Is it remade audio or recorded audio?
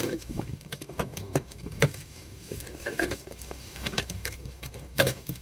remade